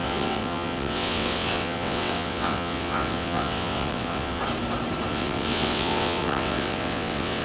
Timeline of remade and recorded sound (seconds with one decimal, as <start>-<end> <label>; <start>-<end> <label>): 0.0-4.4 remade; 4.4-5.1 recorded; 5.1-7.4 remade